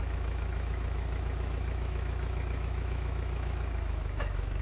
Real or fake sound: fake